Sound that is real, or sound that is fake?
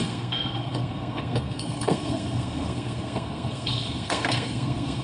fake